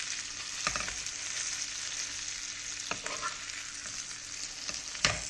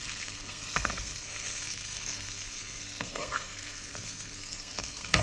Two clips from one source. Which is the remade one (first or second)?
second